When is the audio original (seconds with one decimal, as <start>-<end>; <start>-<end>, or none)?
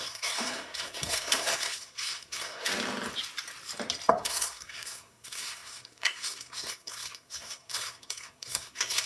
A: 2.7-4.1